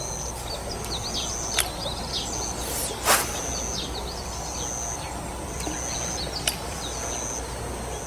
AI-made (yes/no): no